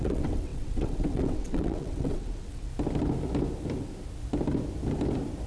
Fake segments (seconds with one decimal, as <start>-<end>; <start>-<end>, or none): 0.0-2.7